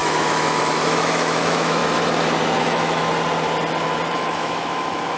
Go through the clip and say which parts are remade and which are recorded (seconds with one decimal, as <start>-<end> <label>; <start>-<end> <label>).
0.0-1.8 remade; 1.8-2.6 recorded; 2.6-3.0 remade; 3.0-4.1 recorded; 4.1-5.2 remade